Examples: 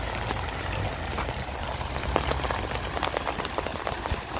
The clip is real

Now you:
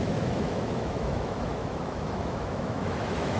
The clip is fake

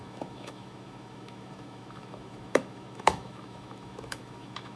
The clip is fake